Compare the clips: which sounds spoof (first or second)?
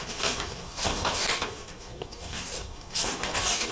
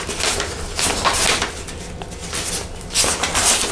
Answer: first